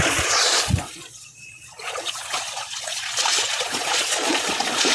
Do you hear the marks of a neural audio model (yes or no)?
yes